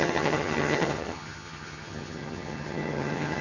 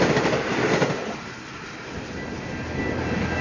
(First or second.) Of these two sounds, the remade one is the first